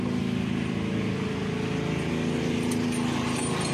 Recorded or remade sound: recorded